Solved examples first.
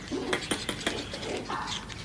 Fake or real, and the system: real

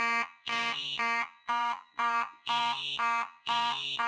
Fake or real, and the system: fake, vocoder, BigVGAN v2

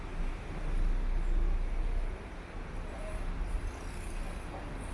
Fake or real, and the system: real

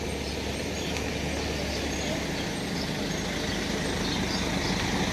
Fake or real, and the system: real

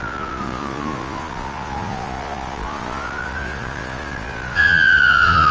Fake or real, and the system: fake, vocoder, Vocos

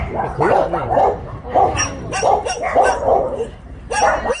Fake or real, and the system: fake, vocoder, BigVGAN v2